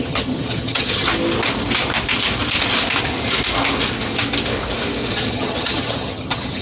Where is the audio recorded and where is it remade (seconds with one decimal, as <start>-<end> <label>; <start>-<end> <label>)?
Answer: 0.0-1.1 remade; 1.1-5.1 recorded; 5.1-6.6 remade